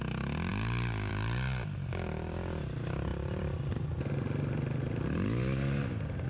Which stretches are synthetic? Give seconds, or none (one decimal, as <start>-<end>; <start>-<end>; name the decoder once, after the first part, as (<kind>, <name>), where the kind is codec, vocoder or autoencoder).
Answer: none